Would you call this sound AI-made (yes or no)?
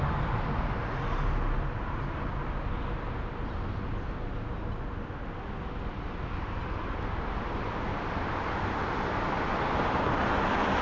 no